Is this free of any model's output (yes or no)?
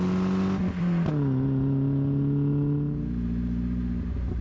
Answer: yes